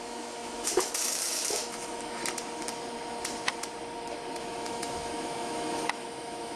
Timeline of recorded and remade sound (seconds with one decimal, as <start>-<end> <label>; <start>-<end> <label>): 0.0-2.2 remade; 2.2-4.4 recorded; 4.4-6.6 remade